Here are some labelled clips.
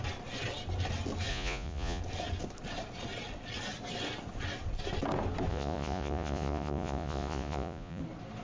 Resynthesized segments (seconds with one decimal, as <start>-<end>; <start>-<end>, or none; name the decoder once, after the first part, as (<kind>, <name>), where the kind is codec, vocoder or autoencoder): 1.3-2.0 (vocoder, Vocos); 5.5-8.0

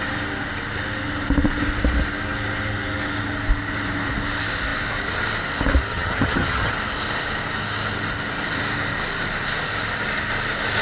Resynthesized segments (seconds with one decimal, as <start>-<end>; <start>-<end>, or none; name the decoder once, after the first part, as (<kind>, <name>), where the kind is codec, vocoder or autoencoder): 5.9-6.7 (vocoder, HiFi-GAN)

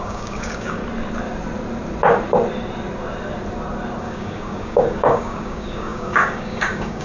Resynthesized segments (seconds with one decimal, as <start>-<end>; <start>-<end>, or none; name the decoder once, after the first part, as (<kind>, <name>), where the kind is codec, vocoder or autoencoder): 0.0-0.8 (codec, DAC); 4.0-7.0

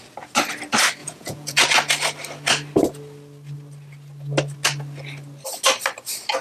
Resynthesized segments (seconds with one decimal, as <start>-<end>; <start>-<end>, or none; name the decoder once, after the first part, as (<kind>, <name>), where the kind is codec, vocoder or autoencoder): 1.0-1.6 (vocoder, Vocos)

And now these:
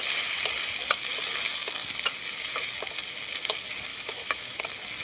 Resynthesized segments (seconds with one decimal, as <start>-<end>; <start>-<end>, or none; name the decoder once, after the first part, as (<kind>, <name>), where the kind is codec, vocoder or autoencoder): 3.9-4.6 (autoencoder, DAC-VAE)